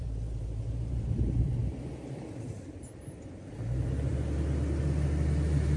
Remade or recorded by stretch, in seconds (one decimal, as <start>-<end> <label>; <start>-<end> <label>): 0.0-1.6 remade; 1.6-2.4 recorded; 2.4-4.1 remade; 4.1-5.8 recorded